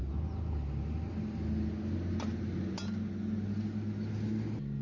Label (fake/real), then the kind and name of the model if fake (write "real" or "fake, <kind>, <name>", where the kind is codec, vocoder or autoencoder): real